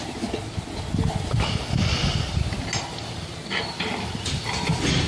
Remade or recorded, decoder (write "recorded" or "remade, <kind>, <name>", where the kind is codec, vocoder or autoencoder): recorded